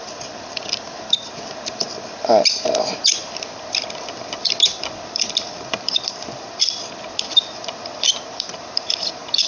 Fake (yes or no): yes